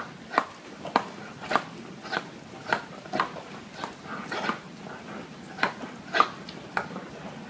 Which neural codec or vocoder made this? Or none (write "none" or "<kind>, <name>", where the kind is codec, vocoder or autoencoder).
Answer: none